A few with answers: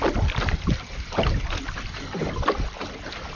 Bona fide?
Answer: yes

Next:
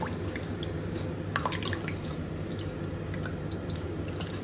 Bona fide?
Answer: yes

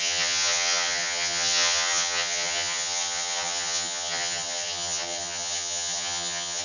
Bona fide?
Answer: no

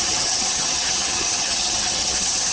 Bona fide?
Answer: no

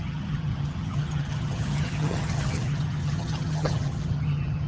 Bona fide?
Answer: no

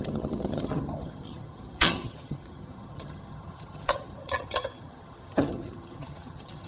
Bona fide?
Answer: no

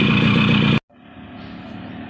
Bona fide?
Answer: yes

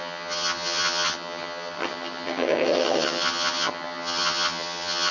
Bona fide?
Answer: no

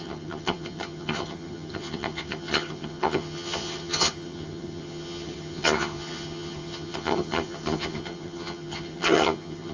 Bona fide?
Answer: no